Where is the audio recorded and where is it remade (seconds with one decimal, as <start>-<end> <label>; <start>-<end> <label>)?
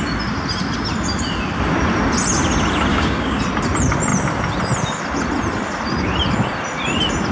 0.0-2.9 recorded; 2.9-3.4 remade; 3.4-7.3 recorded